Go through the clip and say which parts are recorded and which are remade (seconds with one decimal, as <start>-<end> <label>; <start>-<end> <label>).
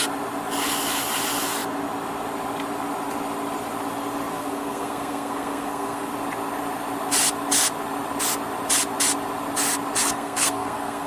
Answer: 0.0-4.3 recorded; 4.3-6.1 remade; 6.1-10.0 recorded; 10.0-11.1 remade